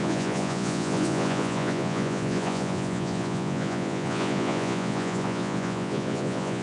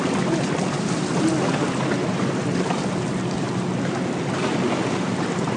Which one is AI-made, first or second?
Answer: first